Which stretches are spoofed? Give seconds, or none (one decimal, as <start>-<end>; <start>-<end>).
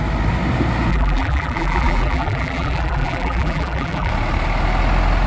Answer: 0.9-4.1